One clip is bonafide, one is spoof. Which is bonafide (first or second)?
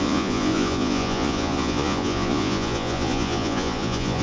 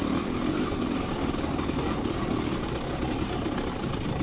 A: second